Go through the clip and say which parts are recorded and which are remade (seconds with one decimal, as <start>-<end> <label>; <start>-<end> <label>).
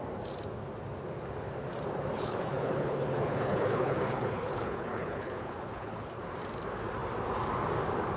0.0-2.1 recorded; 2.1-6.2 remade; 6.2-8.2 recorded